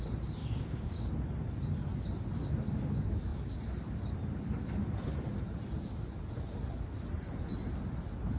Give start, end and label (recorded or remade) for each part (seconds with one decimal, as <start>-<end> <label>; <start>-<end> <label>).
0.0-0.4 recorded; 0.4-1.1 remade; 1.1-8.4 recorded